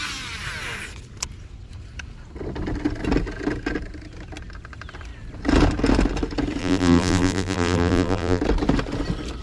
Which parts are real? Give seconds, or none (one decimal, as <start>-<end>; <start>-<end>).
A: 0.0-6.6; 8.4-9.4